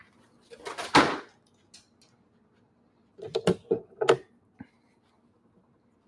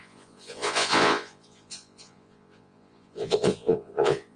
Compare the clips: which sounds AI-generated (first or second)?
second